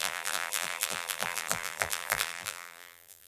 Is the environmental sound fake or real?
fake